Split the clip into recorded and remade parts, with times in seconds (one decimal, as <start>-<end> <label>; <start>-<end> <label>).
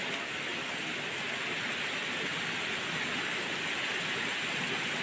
0.0-5.0 recorded